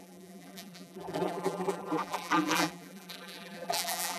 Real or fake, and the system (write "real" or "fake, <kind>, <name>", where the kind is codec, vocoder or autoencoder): fake, vocoder, BigVGAN v2